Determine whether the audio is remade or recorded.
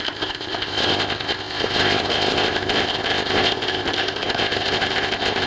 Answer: remade